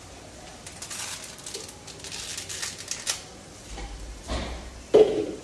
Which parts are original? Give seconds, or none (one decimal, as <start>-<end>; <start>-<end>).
0.0-5.4